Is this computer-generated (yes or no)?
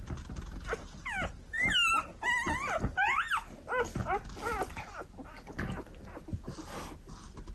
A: no